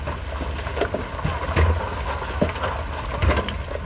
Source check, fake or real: real